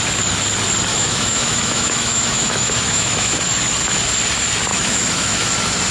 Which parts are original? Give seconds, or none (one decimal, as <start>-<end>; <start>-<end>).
0.0-0.9; 3.4-4.7; 5.5-5.9